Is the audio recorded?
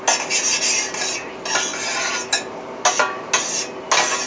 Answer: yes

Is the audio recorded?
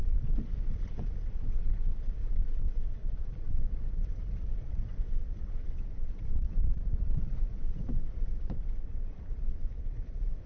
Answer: no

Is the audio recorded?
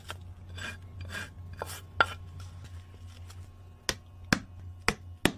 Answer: yes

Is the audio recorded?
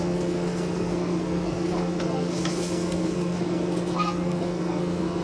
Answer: no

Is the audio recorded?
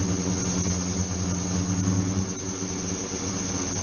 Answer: yes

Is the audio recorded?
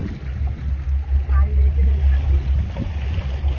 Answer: yes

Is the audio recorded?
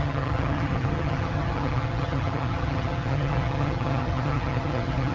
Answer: no